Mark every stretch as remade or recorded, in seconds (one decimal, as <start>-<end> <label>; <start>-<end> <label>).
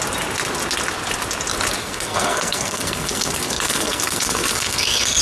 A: 0.0-1.8 recorded; 1.8-5.2 remade